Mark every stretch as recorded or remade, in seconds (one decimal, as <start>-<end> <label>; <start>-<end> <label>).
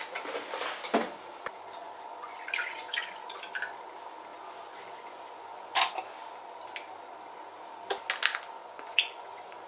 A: 0.0-1.8 recorded; 1.8-3.4 remade; 3.4-4.3 recorded; 4.3-5.9 remade; 5.9-8.6 recorded; 8.6-9.7 remade